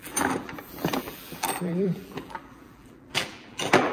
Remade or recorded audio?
remade